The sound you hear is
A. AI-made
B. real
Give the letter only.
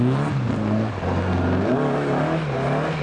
B